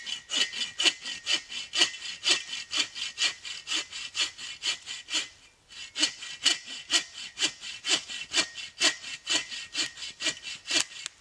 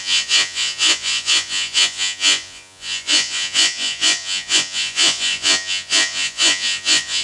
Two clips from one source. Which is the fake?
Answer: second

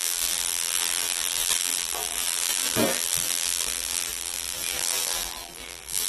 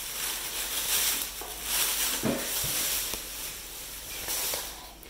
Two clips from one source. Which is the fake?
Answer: first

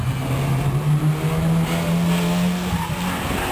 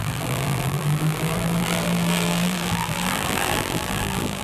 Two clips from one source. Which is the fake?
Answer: second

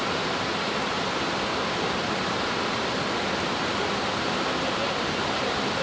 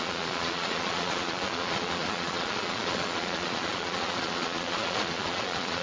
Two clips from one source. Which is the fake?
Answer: second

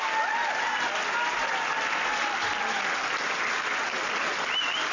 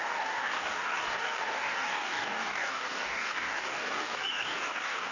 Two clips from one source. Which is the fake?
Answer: second